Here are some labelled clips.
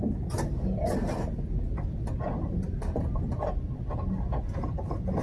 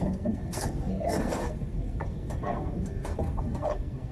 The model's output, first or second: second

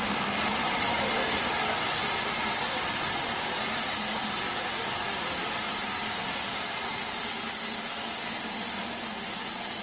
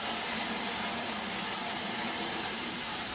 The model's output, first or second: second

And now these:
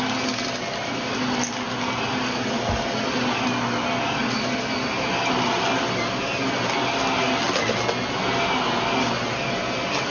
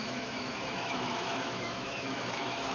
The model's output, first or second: second